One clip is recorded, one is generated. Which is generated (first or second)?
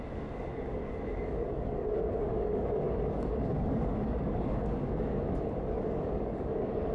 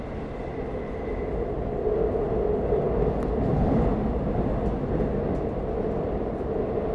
first